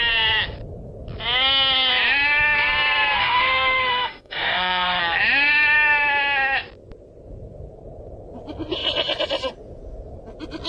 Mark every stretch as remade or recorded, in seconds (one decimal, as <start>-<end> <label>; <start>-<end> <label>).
0.0-3.2 recorded; 3.2-5.0 remade; 5.0-10.7 recorded